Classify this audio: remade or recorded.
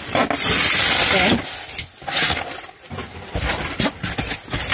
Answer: recorded